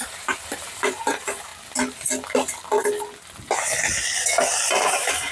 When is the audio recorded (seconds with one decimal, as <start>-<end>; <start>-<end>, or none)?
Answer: 1.5-4.7